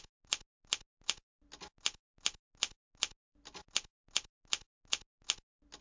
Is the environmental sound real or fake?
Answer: real